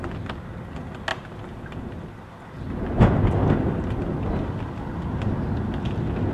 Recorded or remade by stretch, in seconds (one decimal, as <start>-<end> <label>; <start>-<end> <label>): 0.0-6.3 recorded